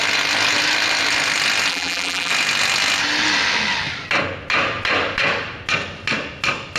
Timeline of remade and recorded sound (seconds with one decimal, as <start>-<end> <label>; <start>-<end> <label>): 0.0-1.7 recorded; 1.7-2.3 remade; 2.3-6.8 recorded